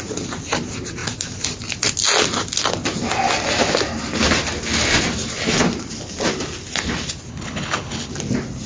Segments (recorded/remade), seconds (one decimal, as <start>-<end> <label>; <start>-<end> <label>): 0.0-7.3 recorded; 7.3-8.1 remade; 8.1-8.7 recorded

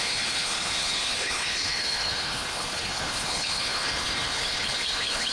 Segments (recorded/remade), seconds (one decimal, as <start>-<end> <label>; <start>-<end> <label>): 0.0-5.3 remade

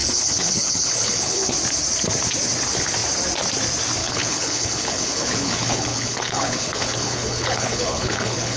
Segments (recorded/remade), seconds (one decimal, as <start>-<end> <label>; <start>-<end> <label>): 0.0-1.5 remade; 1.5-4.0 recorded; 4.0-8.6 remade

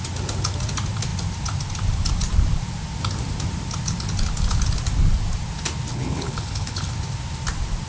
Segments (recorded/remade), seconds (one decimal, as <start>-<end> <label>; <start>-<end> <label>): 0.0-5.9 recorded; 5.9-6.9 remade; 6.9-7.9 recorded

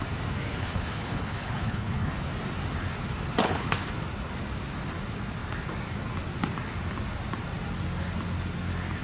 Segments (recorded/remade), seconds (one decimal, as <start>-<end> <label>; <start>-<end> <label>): 0.0-0.5 recorded; 0.5-2.1 remade; 2.1-3.4 recorded; 3.4-3.9 remade; 3.9-9.0 recorded